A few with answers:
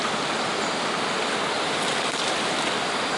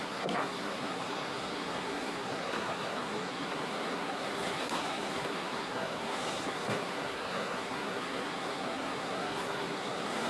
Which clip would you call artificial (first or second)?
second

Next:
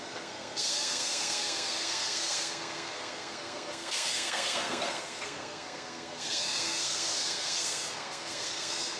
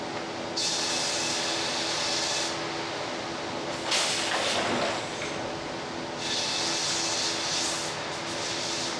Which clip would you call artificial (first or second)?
first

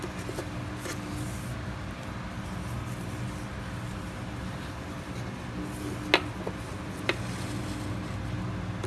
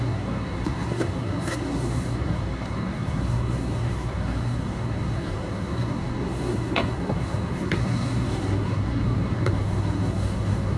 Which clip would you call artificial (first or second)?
second